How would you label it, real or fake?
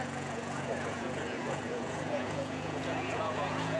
fake